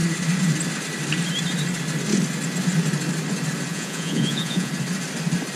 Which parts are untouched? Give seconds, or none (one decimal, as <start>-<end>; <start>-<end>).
0.0-3.7; 4.7-5.6